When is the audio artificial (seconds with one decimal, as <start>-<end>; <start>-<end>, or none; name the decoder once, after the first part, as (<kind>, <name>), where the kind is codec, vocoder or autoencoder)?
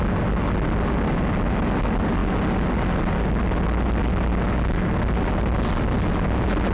none